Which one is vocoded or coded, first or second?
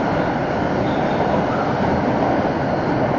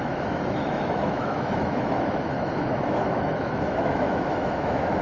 second